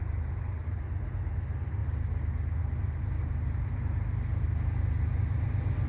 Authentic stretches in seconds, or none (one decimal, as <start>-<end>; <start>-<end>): 0.0-5.9